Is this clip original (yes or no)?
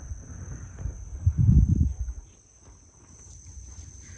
yes